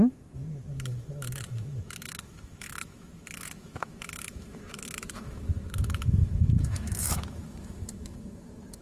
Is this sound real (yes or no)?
no